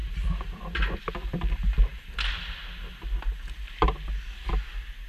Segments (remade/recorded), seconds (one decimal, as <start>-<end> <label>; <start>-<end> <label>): 0.0-1.0 remade; 1.0-5.1 recorded